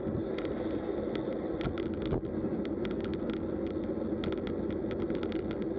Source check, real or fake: real